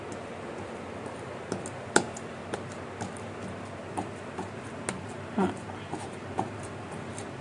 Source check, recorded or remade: recorded